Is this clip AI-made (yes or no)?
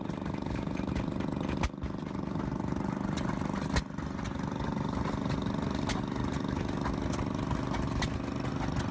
no